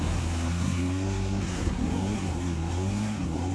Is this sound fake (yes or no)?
yes